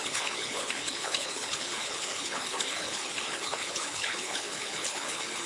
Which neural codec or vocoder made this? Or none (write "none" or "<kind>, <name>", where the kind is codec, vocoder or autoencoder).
codec, HILCodec